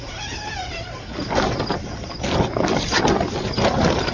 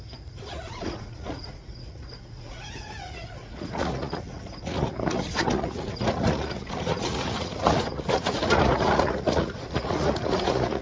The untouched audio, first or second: first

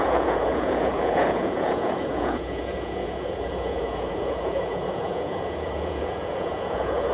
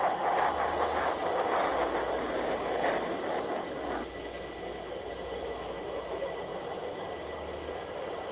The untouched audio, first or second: second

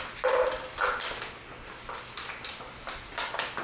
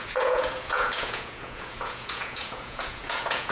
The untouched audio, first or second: first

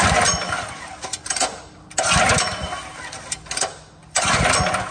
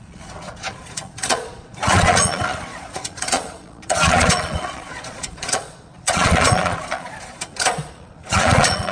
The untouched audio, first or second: first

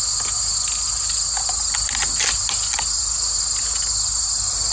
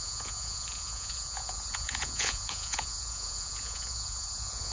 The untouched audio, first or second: first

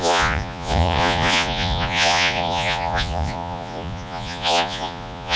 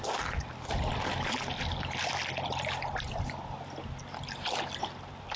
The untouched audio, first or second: second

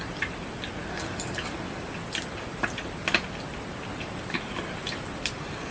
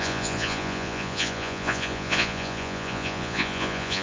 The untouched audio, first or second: first